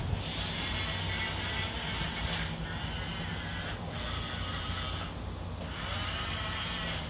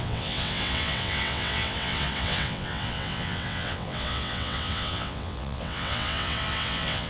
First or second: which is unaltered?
first